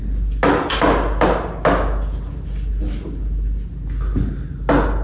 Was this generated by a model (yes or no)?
no